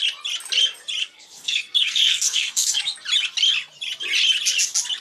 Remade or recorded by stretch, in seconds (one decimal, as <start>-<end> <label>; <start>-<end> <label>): 0.0-1.0 recorded; 1.0-2.8 remade; 2.8-5.0 recorded